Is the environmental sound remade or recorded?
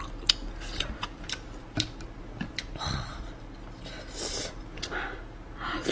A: recorded